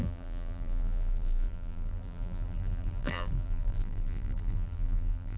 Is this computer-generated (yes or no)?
yes